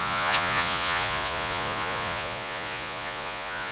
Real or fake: fake